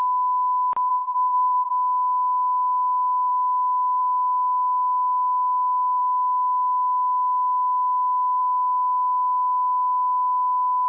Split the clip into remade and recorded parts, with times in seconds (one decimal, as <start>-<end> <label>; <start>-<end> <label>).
0.0-0.9 recorded; 0.9-1.7 remade; 1.7-10.9 recorded